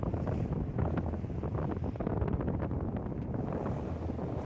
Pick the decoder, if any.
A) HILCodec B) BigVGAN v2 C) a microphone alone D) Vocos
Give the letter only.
C